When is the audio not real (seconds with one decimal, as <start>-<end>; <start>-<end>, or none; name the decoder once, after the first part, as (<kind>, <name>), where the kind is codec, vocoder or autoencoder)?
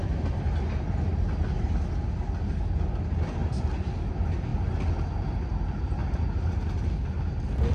6.0-6.8 (vocoder, BigVGAN v2)